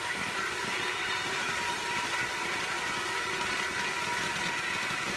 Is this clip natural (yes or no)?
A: no